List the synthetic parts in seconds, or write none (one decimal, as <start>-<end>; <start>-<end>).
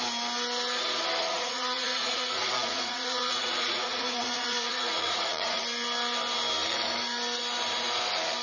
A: 1.2-5.6